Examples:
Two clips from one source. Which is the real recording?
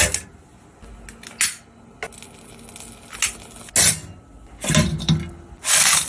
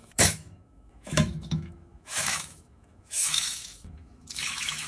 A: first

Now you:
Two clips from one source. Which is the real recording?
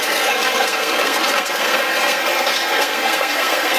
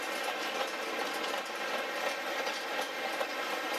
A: second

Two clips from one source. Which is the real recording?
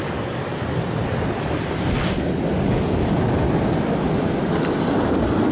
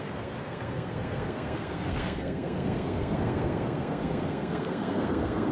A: first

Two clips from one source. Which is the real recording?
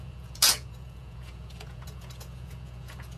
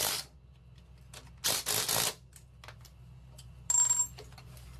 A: second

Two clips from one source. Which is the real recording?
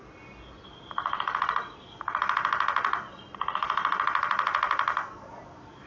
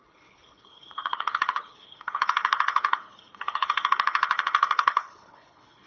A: first